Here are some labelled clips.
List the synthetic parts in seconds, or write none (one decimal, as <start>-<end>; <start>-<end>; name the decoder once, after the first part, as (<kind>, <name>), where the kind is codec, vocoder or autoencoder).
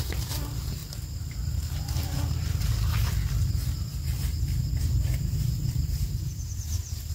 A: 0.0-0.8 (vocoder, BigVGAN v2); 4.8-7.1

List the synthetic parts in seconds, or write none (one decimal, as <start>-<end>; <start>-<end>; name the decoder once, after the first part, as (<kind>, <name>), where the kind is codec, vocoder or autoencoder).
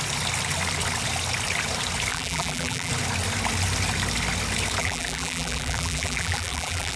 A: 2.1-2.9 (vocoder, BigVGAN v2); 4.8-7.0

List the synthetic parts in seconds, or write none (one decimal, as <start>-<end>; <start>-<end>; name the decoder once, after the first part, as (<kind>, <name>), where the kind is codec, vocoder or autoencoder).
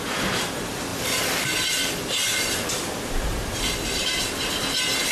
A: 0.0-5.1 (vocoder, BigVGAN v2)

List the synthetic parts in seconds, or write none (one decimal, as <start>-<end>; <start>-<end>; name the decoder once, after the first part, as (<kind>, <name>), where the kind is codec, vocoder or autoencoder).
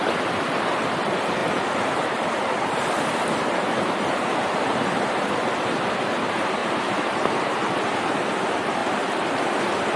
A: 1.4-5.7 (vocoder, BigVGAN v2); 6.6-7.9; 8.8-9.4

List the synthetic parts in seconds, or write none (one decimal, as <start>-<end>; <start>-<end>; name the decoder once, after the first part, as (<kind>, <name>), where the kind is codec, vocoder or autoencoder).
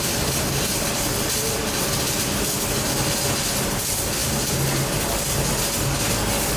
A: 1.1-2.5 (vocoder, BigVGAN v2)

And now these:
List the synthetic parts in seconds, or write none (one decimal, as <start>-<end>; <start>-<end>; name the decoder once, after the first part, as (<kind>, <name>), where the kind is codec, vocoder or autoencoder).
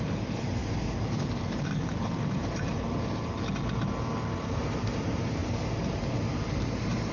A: 0.0-2.7 (vocoder, BigVGAN v2); 4.4-7.1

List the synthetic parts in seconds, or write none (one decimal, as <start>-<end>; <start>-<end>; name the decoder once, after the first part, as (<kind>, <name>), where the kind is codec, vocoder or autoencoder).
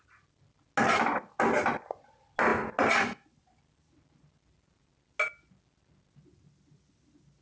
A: none